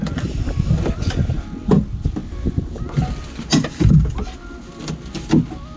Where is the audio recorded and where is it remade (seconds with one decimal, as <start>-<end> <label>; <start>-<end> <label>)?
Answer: 0.0-5.8 recorded